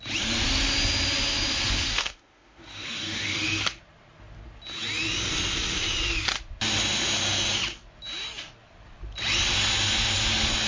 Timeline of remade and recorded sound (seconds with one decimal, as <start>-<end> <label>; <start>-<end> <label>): 0.0-1.9 recorded; 1.9-3.6 remade; 3.6-10.7 recorded